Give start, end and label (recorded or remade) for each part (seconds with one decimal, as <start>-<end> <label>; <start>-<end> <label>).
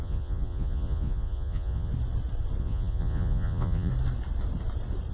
0.0-1.9 remade; 1.9-2.6 recorded; 2.6-3.9 remade; 3.9-5.1 recorded